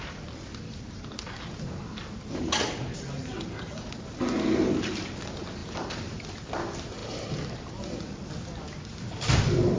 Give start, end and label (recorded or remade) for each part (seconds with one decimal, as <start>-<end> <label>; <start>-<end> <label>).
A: 0.0-9.8 recorded